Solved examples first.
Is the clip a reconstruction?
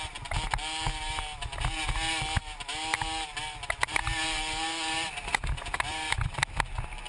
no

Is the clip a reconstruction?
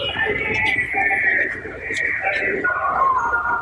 yes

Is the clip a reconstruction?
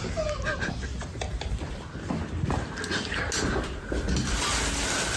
no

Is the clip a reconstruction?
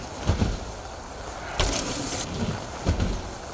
no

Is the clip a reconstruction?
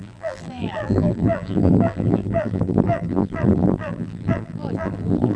yes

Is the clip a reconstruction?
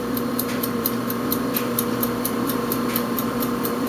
yes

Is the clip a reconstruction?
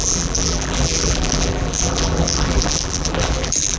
yes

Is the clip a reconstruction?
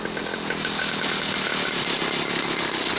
no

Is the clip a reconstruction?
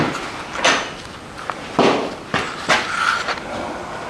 no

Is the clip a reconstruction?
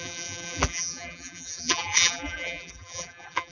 yes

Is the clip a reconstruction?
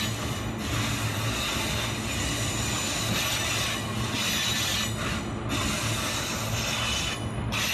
no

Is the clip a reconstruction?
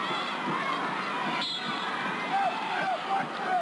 no